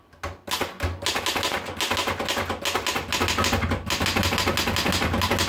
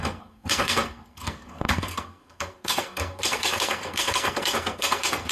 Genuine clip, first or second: first